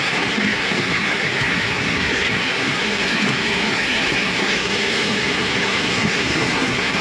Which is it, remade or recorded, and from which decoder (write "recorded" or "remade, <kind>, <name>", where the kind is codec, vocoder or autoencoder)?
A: remade, codec, SNAC